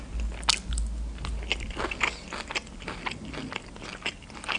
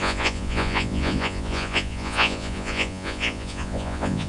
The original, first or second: first